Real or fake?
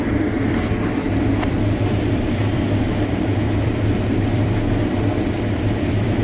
fake